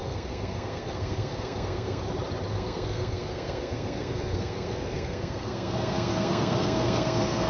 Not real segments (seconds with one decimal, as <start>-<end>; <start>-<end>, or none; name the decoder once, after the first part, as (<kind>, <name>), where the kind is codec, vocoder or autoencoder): 0.0-2.0 (codec, SNAC); 2.5-7.5